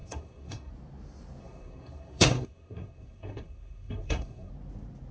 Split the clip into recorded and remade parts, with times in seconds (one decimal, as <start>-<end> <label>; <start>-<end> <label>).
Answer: 0.0-0.7 remade; 0.7-1.4 recorded; 1.4-4.5 remade; 4.5-5.1 recorded